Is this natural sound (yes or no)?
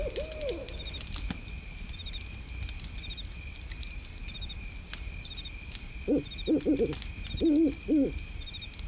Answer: yes